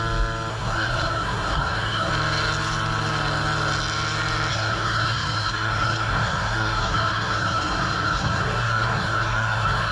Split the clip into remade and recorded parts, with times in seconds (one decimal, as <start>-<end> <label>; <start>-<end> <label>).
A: 0.0-0.5 recorded; 0.5-2.1 remade; 2.1-4.5 recorded; 4.5-9.9 remade